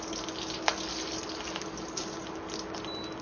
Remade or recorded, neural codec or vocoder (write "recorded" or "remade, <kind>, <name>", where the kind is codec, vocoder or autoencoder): recorded